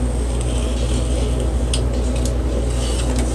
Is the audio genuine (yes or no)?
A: yes